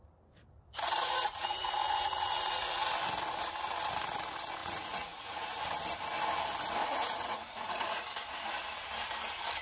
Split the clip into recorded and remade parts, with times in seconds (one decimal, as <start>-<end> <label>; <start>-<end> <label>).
0.0-1.0 recorded; 1.0-2.9 remade; 2.9-4.6 recorded; 4.6-5.6 remade; 5.6-6.8 recorded; 6.8-8.0 remade; 8.0-9.6 recorded